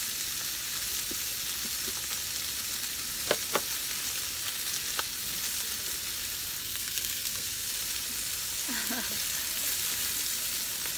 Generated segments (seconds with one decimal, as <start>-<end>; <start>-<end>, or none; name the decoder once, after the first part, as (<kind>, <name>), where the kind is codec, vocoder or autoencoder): 6.6-7.7 (codec, SNAC)